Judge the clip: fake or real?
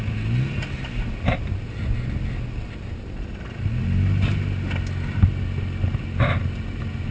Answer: real